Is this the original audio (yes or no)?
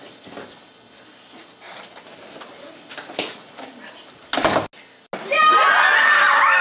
yes